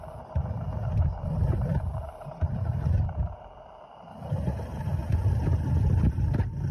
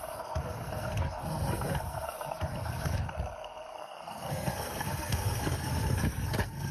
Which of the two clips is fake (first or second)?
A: second